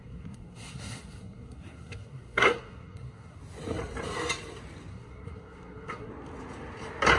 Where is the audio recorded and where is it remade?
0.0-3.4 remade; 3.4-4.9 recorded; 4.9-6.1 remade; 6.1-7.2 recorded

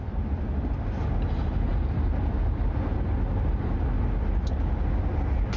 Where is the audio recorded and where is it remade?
0.0-5.6 recorded

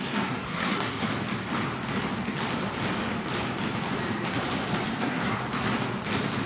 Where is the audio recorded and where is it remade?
0.0-1.1 remade; 1.1-5.0 recorded; 5.0-5.4 remade; 5.4-6.5 recorded

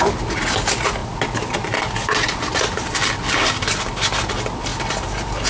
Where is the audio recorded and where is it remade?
0.0-5.5 recorded

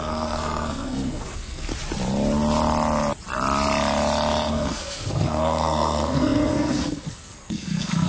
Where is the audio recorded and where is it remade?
0.0-1.7 remade; 1.7-4.5 recorded; 4.5-8.1 remade

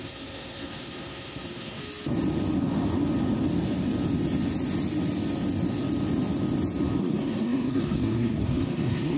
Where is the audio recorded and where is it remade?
0.0-1.8 remade; 1.8-7.0 recorded; 7.0-9.2 remade